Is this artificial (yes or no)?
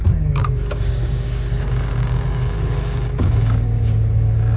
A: yes